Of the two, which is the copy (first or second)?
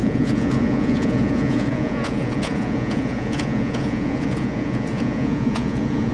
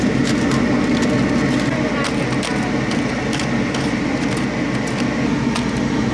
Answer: first